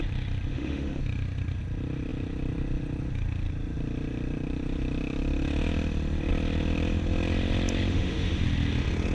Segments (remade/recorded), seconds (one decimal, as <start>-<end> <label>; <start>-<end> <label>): 0.0-0.5 recorded; 0.5-1.0 remade; 1.0-7.9 recorded; 7.9-8.4 remade; 8.4-9.1 recorded